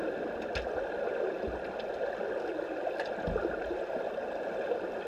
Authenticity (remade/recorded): recorded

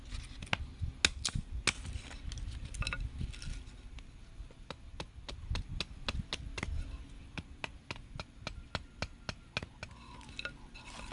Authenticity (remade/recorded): recorded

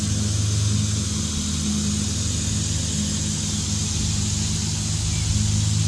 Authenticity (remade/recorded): recorded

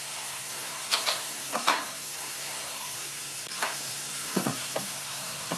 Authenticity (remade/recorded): remade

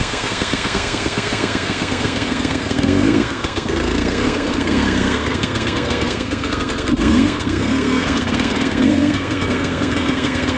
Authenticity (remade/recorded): remade